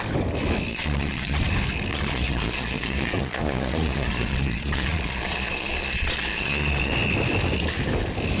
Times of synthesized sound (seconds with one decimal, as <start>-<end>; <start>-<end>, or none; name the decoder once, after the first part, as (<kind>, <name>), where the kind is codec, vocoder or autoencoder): 0.7-1.4 (vocoder, Vocos); 1.9-6.9